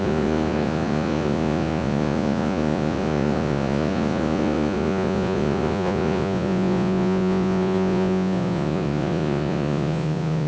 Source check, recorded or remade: remade